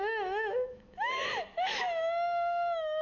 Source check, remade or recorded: remade